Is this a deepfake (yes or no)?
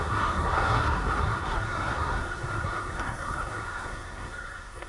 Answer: yes